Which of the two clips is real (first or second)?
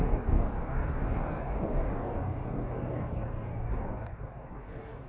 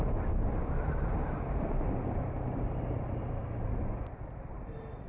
second